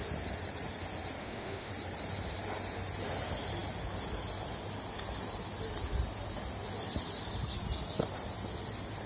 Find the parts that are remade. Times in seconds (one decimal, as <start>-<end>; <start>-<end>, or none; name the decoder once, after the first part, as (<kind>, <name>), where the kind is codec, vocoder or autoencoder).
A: 1.2-1.7 (autoencoder, DAC-VAE)